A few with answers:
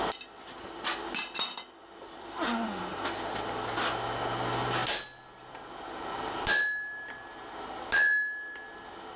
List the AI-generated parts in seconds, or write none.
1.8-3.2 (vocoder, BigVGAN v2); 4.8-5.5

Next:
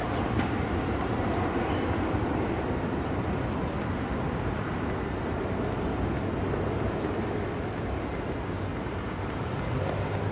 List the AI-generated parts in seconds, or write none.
0.0-1.7 (vocoder, BigVGAN v2); 8.7-9.5

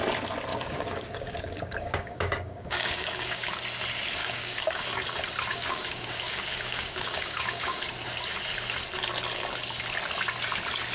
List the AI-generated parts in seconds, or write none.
0.5-3.5 (codec, DAC); 4.2-4.8; 5.5-7.8

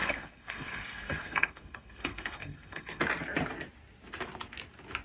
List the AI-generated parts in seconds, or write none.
0.0-3.0 (codec, SNAC)

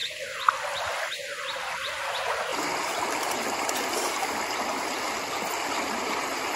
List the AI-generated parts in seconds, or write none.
1.9-2.5 (vocoder, BigVGAN v2); 6.0-6.6

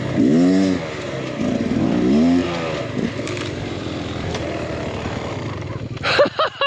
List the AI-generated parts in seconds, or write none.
2.4-4.8 (vocoder, BigVGAN v2)

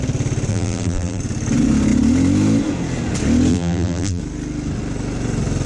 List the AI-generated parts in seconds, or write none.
0.5-1.2 (vocoder, BigVGAN v2); 3.5-4.2